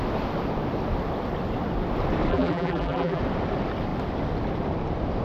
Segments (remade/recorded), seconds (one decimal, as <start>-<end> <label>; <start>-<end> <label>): 0.0-2.3 recorded; 2.3-3.2 remade; 3.2-5.2 recorded